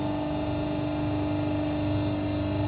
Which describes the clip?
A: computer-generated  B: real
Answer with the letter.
B